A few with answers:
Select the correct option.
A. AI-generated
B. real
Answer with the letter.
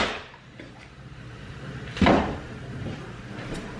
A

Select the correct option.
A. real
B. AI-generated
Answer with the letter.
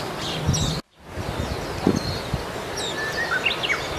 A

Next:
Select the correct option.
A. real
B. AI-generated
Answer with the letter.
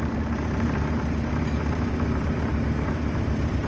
B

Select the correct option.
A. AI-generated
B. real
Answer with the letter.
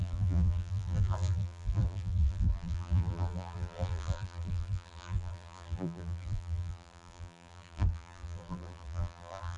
A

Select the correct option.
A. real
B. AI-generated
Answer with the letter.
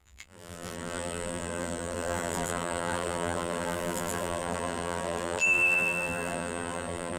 B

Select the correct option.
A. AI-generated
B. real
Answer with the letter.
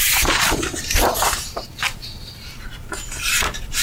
A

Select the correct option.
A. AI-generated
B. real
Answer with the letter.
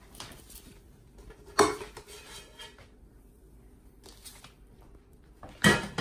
A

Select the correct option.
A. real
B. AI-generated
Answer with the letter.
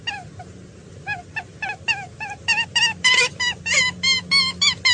A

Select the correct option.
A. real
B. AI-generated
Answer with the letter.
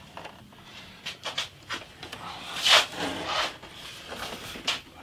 B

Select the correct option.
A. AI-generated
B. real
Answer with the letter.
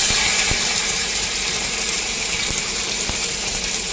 A